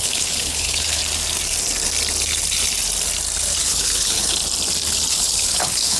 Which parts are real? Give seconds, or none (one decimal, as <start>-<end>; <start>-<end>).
1.0-3.6; 4.4-5.1